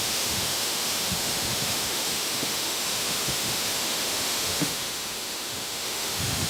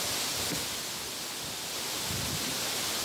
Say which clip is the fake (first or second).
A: first